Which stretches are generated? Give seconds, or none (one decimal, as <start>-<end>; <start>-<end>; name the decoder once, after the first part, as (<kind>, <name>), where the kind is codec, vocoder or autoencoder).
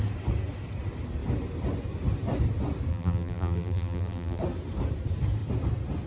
2.9-4.4 (vocoder, BigVGAN v2)